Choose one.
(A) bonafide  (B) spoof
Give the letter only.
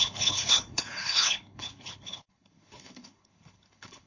B